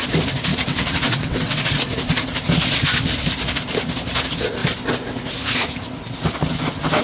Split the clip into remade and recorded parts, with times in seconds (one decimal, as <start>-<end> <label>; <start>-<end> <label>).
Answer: 0.0-0.5 recorded; 0.5-1.6 remade; 1.6-7.0 recorded